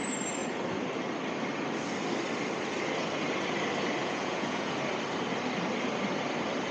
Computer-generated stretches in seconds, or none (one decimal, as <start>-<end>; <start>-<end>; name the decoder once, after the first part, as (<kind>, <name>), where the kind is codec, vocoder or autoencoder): 4.0-4.7 (vocoder, Vocos)